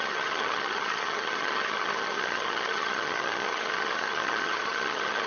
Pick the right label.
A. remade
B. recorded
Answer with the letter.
A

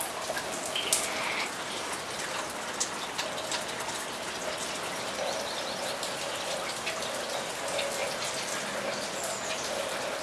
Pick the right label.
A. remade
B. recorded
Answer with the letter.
B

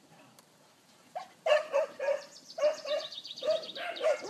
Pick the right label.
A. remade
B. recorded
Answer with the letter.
A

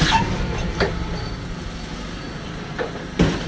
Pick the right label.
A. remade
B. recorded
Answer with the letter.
B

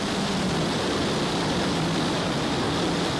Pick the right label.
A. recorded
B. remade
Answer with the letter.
B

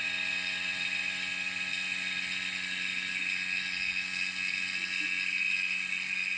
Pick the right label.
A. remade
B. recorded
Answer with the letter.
B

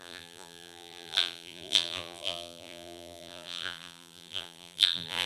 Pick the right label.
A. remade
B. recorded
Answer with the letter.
A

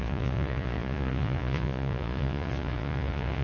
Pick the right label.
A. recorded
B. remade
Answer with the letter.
B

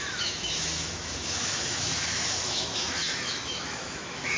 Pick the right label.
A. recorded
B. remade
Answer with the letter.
B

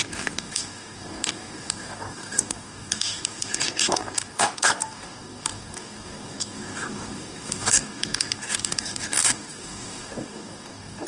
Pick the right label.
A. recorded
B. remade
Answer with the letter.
B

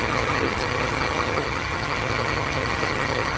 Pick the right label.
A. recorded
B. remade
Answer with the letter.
B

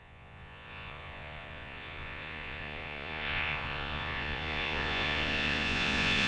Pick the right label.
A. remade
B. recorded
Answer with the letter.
A